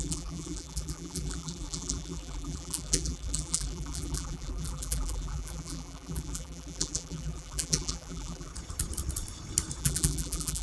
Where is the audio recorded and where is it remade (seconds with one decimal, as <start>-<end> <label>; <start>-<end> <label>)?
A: 0.0-8.5 remade; 8.5-9.8 recorded; 9.8-10.6 remade